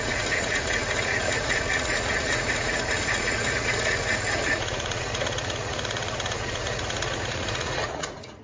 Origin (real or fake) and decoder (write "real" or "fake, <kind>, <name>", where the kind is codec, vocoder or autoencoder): fake, vocoder, Vocos